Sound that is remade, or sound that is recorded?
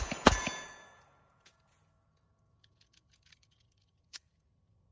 remade